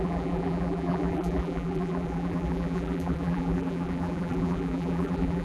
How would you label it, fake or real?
fake